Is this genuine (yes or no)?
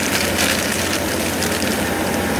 yes